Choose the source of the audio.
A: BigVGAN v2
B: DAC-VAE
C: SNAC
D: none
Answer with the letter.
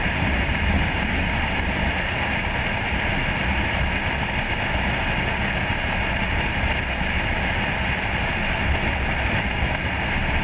D